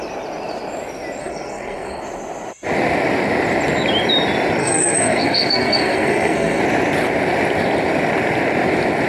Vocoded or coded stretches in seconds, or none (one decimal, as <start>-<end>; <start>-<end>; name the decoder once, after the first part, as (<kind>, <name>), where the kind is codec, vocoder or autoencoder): 1.2-2.0 (codec, SNAC); 4.6-6.6